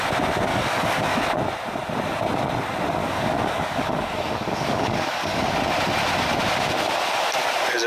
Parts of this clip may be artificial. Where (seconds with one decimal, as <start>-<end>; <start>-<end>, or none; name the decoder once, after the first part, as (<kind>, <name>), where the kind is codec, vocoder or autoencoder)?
0.5-1.2 (codec, DAC); 3.0-5.5